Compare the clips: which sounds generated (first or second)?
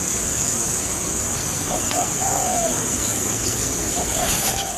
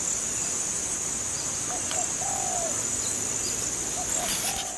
first